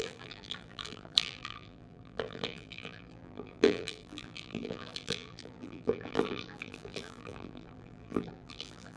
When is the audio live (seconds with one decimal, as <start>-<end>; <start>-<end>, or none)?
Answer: none